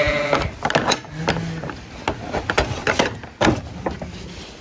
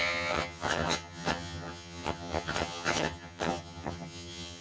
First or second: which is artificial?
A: second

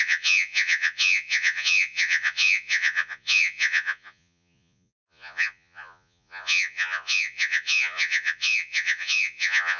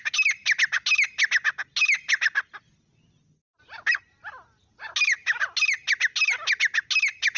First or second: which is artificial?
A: first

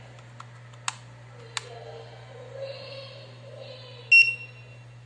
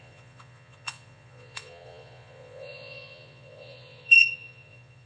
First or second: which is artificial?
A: second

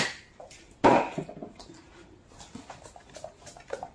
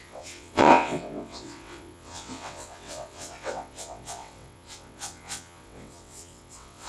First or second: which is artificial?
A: second